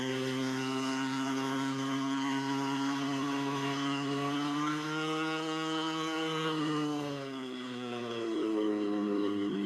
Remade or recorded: remade